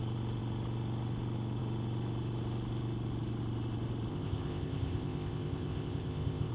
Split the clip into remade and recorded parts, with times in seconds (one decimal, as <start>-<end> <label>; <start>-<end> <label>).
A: 0.0-4.1 recorded; 4.1-6.5 remade

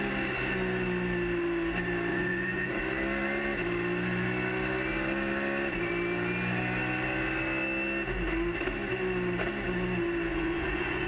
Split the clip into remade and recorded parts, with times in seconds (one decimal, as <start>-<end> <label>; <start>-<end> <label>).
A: 0.0-2.1 recorded; 2.1-2.8 remade; 2.8-10.3 recorded; 10.3-11.1 remade